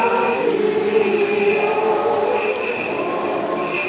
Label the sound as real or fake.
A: real